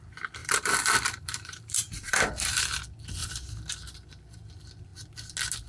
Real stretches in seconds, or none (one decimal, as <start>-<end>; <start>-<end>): 0.0-0.4; 2.6-3.2; 3.7-5.7